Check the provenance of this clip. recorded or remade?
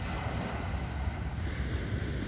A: recorded